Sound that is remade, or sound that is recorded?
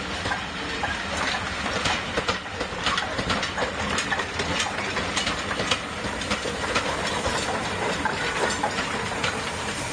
recorded